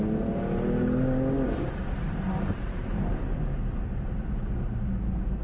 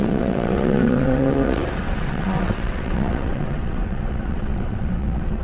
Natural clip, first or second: first